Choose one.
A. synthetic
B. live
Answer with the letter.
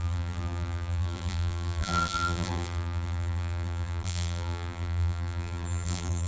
A